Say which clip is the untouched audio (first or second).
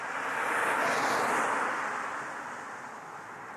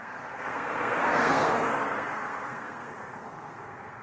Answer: first